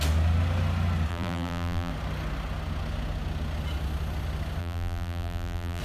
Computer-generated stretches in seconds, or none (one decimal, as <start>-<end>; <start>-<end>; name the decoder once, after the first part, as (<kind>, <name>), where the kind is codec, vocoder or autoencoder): 1.1-1.9 (vocoder, BigVGAN v2); 4.6-5.8